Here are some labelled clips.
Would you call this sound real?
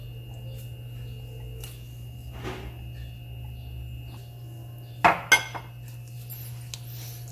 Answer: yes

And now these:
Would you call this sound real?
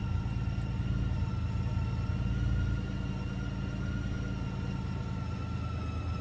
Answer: yes